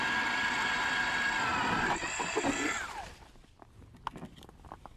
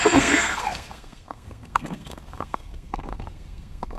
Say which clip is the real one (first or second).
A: first